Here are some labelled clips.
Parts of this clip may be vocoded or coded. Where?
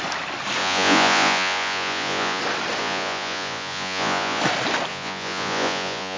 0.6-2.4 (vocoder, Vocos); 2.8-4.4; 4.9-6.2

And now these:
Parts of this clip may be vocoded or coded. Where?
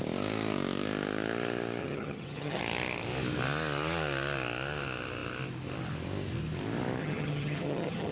1.8-2.6 (vocoder, HiFi-GAN); 7.0-8.1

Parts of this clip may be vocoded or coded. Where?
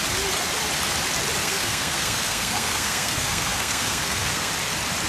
1.4-4.5 (codec, SNAC)